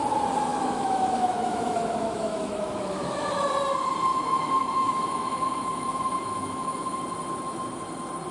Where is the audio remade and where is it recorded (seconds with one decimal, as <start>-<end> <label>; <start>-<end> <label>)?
0.0-0.5 recorded; 0.5-3.5 remade; 3.5-4.1 recorded; 4.1-7.0 remade; 7.0-8.3 recorded